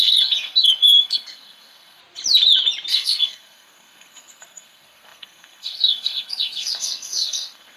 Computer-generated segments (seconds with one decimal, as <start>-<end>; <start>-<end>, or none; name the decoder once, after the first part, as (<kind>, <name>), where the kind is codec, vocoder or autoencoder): 0.0-2.0 (codec, SNAC); 2.9-7.8

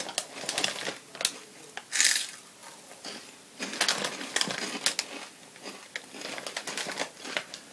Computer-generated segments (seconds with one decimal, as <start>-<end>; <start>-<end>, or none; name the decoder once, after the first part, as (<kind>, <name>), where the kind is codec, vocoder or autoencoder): none

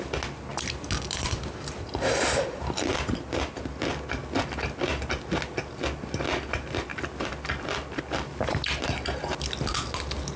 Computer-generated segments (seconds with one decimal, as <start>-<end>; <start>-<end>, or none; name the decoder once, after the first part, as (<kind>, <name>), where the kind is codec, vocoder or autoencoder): none

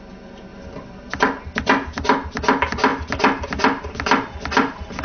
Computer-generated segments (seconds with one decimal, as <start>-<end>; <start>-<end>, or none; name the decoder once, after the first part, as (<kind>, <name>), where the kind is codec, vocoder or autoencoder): none

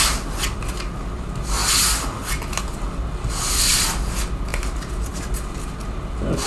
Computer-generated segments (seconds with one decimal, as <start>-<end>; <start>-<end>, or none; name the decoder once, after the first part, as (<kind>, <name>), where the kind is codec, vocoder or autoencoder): none

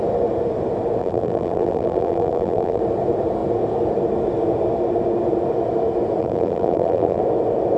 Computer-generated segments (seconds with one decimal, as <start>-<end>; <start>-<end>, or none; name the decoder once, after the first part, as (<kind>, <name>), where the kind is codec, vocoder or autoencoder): 1.0-2.8 (vocoder, BigVGAN v2); 6.2-7.2